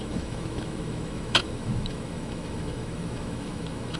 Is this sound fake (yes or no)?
yes